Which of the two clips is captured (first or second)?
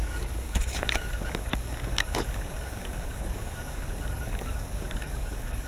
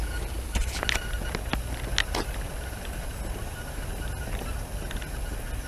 second